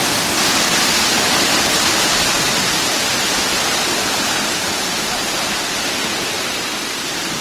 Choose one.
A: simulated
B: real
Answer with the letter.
B